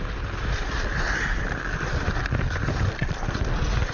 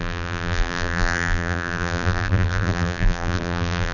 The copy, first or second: second